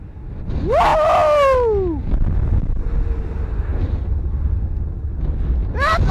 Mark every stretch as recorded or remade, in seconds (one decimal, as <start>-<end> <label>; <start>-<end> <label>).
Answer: 0.0-6.1 recorded